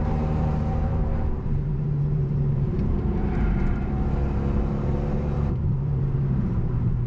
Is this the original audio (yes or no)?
no